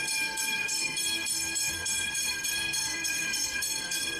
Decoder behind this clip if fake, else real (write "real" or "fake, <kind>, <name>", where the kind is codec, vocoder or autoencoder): fake, codec, SNAC